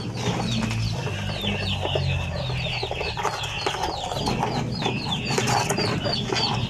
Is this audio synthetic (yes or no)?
no